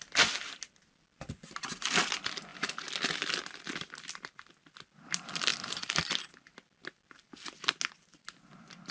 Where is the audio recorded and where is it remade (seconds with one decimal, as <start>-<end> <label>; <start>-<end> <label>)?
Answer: 0.0-5.5 recorded; 5.5-6.3 remade; 6.3-8.9 recorded